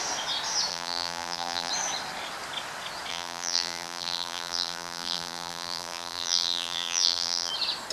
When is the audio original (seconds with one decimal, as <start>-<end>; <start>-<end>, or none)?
0.0-0.7; 1.7-3.1; 7.5-7.9